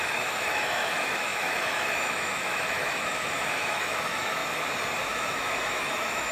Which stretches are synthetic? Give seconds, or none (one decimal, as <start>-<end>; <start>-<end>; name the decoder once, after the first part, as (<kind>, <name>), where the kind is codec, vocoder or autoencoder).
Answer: 0.0-4.4 (autoencoder, DAC-VAE); 5.0-6.3